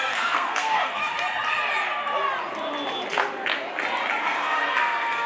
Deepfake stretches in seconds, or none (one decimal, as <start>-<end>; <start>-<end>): 0.0-1.0; 4.2-5.3